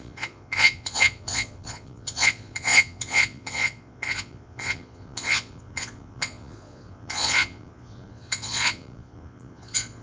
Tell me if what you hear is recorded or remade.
remade